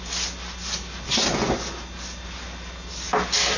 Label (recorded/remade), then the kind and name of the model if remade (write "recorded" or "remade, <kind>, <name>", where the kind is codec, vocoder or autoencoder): recorded